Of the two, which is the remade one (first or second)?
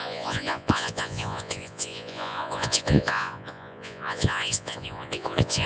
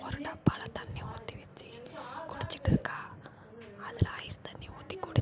first